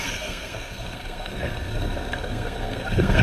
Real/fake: fake